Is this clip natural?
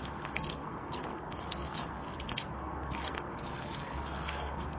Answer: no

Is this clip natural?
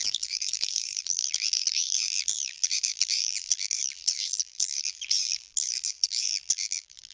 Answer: no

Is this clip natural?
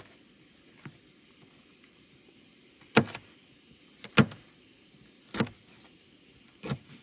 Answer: yes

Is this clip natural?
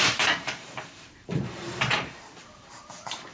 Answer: no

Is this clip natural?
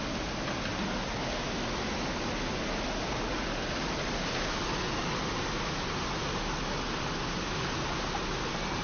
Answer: yes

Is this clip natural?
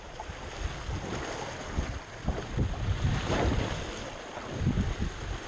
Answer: yes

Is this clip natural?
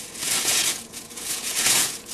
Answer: no